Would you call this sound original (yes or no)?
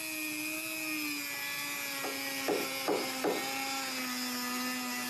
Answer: yes